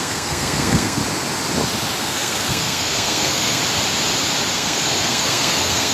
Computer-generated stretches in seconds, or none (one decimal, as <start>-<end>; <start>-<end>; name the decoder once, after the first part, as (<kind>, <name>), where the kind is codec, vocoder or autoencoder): 0.0-1.0 (codec, SNAC); 2.0-3.6; 4.5-5.9